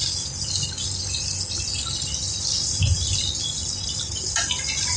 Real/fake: real